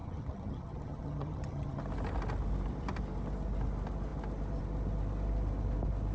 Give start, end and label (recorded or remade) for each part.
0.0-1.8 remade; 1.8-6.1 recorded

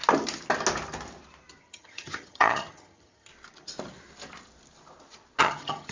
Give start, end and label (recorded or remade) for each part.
0.0-1.6 recorded; 1.6-3.3 remade; 3.3-5.4 recorded; 5.4-5.9 remade

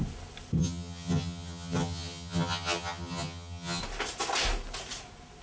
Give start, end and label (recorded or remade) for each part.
0.0-0.6 recorded; 0.6-3.8 remade; 3.8-5.4 recorded

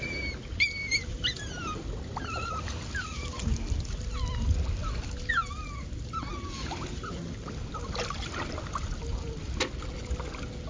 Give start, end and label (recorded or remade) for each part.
0.0-10.7 recorded